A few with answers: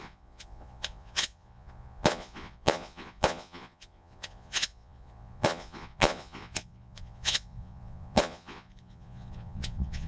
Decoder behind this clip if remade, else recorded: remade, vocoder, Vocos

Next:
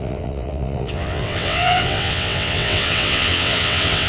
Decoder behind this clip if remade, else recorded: remade, vocoder, WaveNeXt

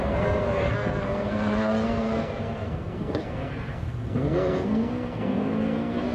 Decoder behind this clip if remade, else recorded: remade, codec, SNAC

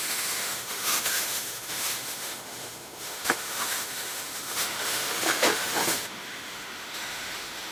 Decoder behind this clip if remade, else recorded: remade, autoencoder, DAC-VAE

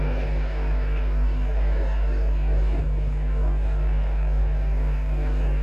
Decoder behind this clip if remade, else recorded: remade, codec, DAC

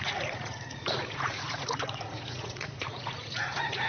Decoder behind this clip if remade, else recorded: remade, vocoder, Vocos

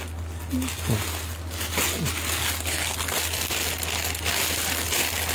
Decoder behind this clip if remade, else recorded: recorded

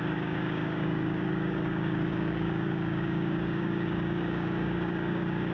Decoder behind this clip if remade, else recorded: remade, codec, DAC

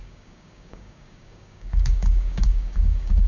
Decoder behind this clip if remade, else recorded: remade, codec, DAC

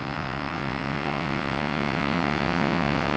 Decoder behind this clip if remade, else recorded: remade, vocoder, WaveNeXt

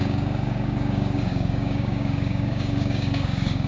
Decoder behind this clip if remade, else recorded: remade, codec, DAC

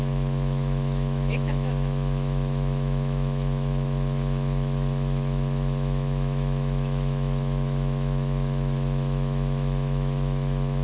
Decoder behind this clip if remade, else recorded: remade, autoencoder, DAC-VAE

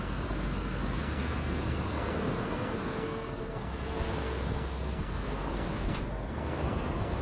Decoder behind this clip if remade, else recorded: remade, codec, SNAC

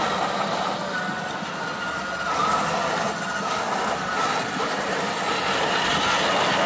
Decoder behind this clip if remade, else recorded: recorded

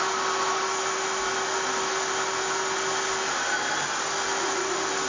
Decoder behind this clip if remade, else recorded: recorded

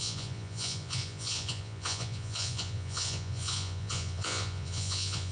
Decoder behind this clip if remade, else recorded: remade, vocoder, Vocos